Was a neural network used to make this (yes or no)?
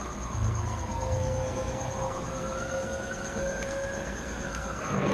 yes